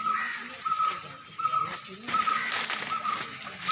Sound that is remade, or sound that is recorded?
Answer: recorded